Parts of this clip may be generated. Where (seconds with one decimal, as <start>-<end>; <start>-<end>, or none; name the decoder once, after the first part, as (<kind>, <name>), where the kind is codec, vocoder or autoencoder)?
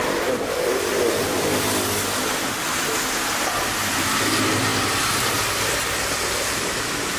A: none